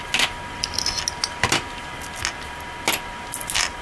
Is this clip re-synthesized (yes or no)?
no